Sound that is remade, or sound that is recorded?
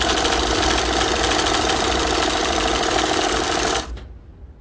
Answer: remade